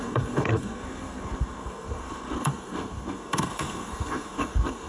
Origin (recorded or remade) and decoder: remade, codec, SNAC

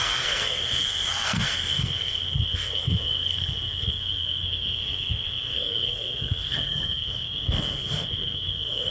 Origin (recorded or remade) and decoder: remade, codec, SNAC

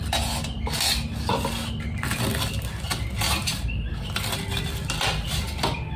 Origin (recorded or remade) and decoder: recorded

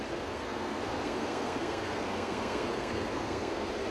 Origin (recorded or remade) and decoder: remade, codec, SNAC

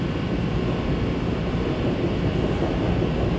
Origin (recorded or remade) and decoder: recorded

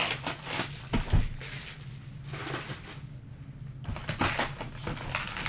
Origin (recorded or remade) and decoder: recorded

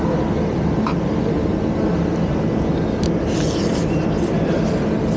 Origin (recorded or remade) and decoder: recorded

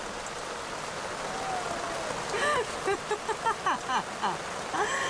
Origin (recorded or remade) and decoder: recorded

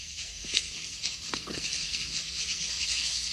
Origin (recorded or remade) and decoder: remade, codec, SNAC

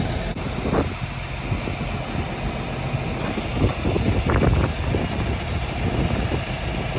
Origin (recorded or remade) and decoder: recorded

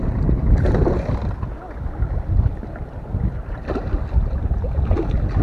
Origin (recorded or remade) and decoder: recorded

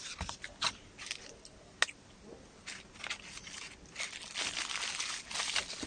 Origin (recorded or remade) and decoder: recorded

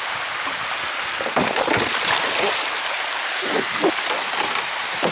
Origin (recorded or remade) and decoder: recorded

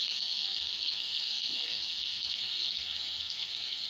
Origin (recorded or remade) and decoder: remade, codec, SNAC